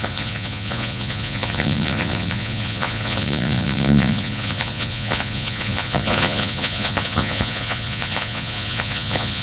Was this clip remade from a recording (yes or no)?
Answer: yes